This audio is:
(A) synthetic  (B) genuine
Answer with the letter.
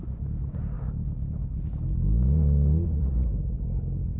B